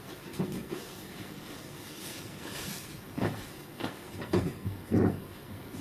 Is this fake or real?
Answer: fake